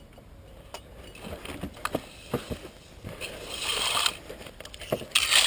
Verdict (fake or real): real